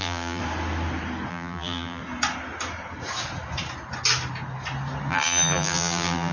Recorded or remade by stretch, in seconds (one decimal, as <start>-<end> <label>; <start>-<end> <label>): 0.0-0.4 remade; 0.4-1.3 recorded; 1.3-2.0 remade; 2.0-5.1 recorded; 5.1-6.3 remade